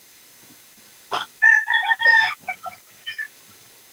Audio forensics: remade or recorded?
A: remade